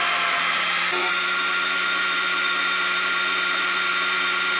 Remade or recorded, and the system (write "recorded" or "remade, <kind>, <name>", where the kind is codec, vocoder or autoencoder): remade, vocoder, BigVGAN v2